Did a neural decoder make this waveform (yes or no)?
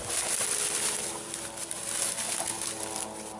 no